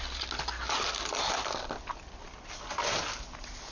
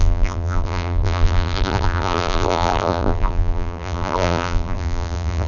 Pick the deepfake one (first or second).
second